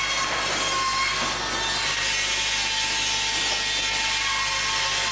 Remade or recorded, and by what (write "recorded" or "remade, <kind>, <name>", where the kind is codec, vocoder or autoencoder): recorded